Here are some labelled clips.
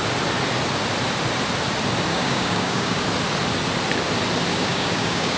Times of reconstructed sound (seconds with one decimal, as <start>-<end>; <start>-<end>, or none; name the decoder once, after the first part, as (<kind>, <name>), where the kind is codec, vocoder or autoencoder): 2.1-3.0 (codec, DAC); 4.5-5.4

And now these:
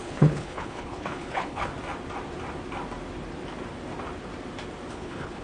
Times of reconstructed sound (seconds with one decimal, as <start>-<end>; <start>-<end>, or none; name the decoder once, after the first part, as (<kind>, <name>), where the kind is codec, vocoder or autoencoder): 0.0-1.7 (codec, HILCodec); 4.9-5.4

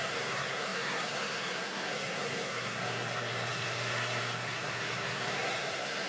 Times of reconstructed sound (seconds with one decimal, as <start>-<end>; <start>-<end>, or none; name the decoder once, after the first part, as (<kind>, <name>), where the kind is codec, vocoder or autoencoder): 0.0-6.1 (codec, SNAC)

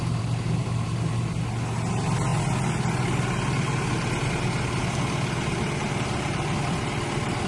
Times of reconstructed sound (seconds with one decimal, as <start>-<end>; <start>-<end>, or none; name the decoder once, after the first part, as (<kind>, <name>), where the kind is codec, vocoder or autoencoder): none

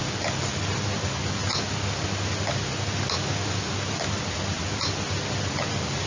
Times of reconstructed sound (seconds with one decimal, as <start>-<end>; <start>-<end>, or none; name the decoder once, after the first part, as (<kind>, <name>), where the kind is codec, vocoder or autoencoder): none

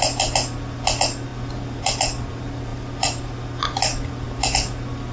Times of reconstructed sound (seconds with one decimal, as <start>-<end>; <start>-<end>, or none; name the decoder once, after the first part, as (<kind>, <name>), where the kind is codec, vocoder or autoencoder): none